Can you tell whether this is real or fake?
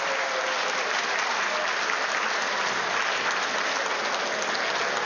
real